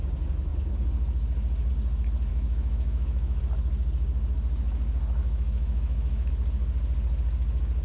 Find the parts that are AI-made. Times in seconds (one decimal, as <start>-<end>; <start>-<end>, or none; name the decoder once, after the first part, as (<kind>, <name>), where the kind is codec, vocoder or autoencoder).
2.3-3.4 (autoencoder, DAC-VAE); 5.2-6.3